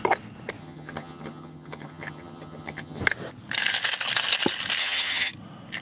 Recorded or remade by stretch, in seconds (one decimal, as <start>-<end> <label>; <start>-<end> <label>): 0.0-0.6 recorded; 0.6-3.0 remade; 3.0-4.8 recorded; 4.8-5.3 remade; 5.3-5.8 recorded